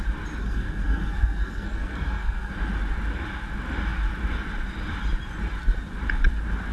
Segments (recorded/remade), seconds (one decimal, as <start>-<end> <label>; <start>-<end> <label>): 0.0-0.4 recorded; 0.4-2.5 remade; 2.5-6.7 recorded